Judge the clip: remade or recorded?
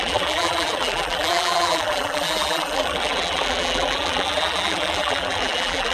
remade